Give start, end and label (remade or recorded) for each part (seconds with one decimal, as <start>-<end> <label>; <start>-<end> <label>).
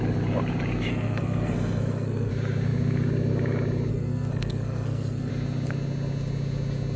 0.0-0.9 recorded; 0.9-2.3 remade; 2.3-3.9 recorded; 3.9-5.3 remade; 5.3-7.0 recorded